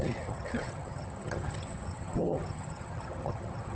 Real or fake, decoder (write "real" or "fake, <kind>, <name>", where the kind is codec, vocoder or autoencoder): fake, vocoder, HiFi-GAN